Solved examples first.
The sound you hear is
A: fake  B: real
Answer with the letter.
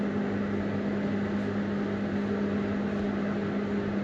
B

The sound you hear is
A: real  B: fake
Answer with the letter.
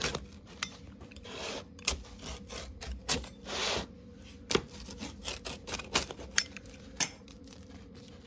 B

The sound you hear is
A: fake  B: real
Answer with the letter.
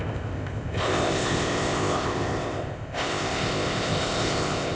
A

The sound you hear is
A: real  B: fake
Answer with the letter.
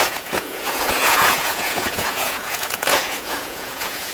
B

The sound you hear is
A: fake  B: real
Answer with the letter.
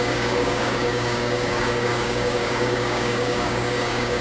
A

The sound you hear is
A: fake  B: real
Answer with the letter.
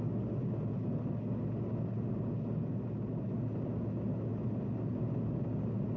B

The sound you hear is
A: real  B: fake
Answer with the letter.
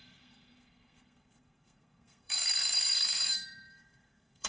B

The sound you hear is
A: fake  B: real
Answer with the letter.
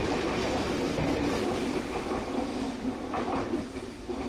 B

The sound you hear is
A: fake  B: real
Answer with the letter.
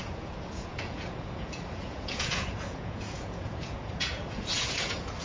A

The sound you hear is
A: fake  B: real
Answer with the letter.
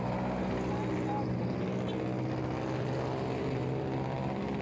B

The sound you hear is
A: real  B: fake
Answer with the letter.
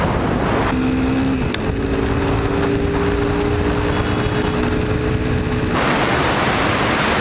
A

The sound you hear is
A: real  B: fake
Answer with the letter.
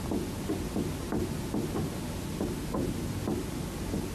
A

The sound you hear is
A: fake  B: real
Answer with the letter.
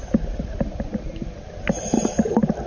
B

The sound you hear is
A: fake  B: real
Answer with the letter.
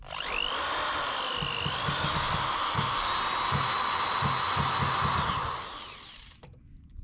B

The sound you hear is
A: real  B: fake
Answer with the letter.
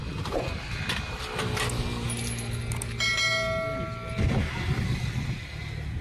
A